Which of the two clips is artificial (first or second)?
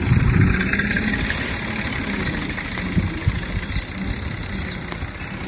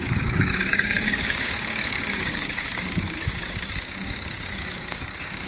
second